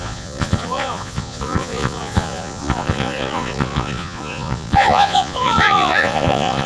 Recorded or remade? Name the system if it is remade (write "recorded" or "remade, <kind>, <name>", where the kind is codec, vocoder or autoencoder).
remade, vocoder, Vocos